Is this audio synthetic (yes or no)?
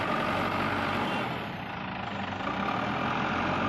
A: no